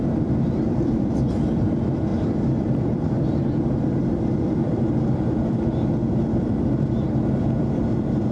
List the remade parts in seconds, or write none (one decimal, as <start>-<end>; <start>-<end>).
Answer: 0.0-2.1; 2.6-8.3